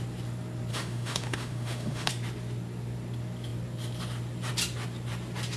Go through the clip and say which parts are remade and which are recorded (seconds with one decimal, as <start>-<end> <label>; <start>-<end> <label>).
0.0-0.7 recorded; 0.7-2.1 remade; 2.1-5.6 recorded